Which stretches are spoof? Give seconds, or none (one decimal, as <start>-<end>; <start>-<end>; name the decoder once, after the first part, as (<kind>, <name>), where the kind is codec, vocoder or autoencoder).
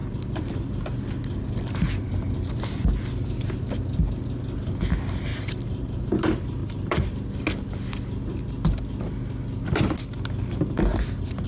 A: 0.0-0.8 (vocoder, BigVGAN v2); 5.3-6.0; 6.6-7.1